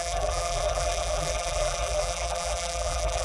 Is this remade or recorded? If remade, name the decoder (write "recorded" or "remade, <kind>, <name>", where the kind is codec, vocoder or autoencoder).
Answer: remade, vocoder, BigVGAN v2